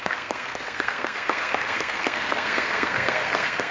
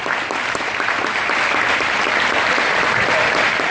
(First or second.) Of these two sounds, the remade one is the first